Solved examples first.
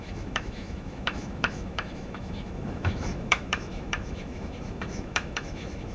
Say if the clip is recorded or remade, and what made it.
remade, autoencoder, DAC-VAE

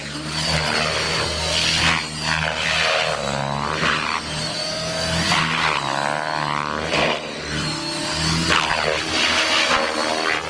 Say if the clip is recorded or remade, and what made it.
recorded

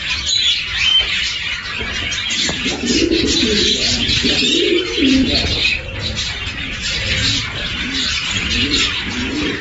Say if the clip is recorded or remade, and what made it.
recorded